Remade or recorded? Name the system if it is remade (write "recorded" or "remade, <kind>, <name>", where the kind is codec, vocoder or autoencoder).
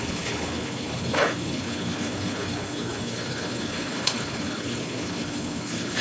remade, codec, HILCodec